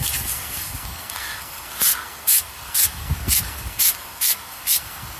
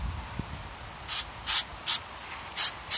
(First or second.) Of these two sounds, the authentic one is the second